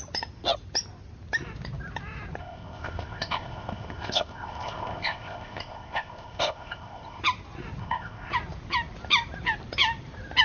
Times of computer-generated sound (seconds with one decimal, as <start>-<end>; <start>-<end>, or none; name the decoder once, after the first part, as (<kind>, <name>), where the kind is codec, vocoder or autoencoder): 2.4-7.2 (codec, ZipCodec); 7.8-8.3